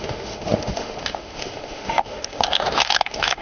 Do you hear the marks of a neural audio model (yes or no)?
yes